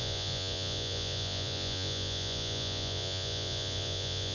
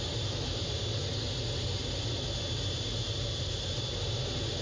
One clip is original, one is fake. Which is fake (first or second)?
first